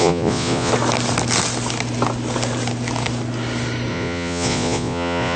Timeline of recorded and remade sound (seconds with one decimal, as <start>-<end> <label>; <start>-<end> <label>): 0.0-0.7 remade; 0.7-3.9 recorded; 3.9-5.4 remade